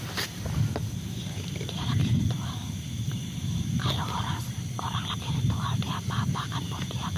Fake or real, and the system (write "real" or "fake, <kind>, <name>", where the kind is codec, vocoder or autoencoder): fake, vocoder, BigVGAN v2